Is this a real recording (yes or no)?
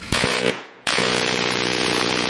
no